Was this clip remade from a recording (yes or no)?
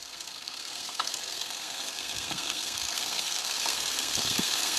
yes